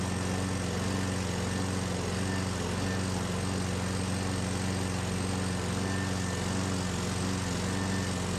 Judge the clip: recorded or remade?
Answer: recorded